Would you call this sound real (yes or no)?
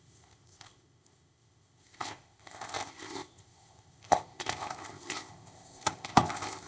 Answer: no